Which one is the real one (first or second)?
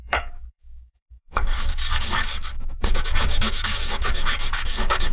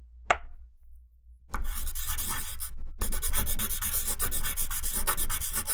second